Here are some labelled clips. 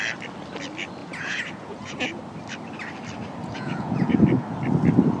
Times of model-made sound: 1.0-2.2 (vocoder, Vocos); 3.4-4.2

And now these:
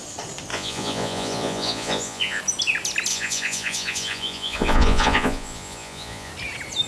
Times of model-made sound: 0.5-2.4 (vocoder, Vocos); 3.1-6.3

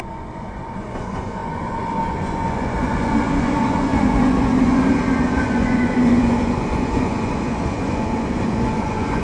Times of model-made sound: 0.0-9.2 (vocoder, Vocos)

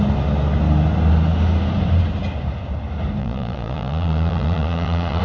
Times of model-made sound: 3.2-5.2 (vocoder, Vocos)

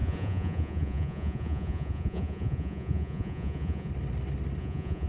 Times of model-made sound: 0.0-3.9 (vocoder, Vocos); 4.6-5.1

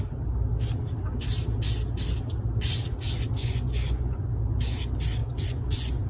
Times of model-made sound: 3.4-4.3 (vocoder, Vocos); 5.2-6.1

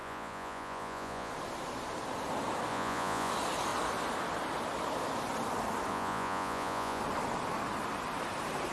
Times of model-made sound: 0.0-1.3 (vocoder, Vocos); 2.7-3.3; 5.9-7.0